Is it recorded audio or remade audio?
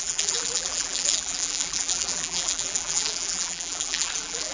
remade